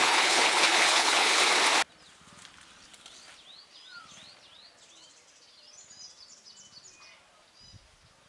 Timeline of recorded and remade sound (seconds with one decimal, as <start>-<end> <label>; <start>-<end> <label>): 0.0-1.4 remade; 1.4-8.3 recorded